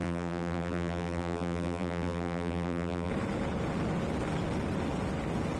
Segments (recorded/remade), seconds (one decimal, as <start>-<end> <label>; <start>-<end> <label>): 0.0-3.1 remade; 3.1-5.6 recorded